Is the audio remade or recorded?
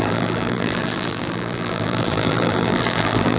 remade